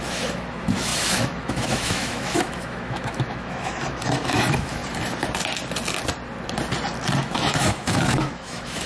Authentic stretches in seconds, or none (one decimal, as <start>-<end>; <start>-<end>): 4.8-7.2